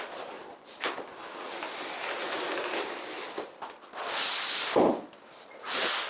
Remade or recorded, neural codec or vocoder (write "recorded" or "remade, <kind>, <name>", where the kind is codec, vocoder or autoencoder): recorded